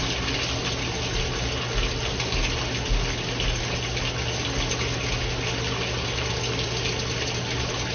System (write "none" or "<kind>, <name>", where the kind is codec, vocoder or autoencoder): none